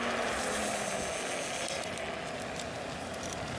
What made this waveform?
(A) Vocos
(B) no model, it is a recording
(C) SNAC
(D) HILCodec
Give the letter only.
B